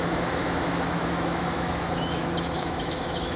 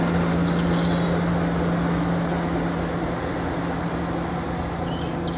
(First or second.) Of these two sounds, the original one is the second